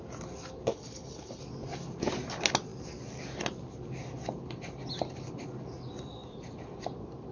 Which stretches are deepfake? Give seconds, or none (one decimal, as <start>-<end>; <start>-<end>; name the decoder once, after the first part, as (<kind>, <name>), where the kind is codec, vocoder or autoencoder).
0.7-1.4 (codec, HILCodec)